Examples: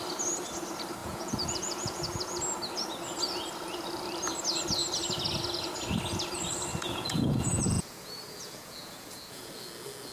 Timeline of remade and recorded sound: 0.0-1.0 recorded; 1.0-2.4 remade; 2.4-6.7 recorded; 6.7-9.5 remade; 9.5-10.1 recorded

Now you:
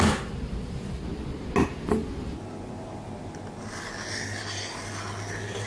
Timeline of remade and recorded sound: 0.0-5.7 recorded

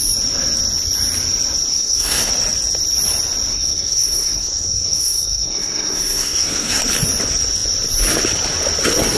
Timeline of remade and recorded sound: 0.0-1.7 recorded; 1.7-2.3 remade; 2.3-3.5 recorded; 3.5-6.8 remade; 6.8-9.2 recorded

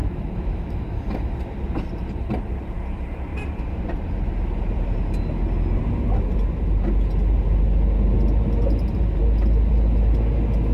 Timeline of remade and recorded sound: 0.0-1.3 remade; 1.3-10.7 recorded

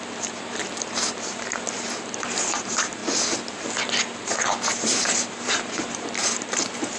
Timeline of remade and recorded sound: 0.0-3.0 remade; 3.0-4.7 recorded; 4.7-7.0 remade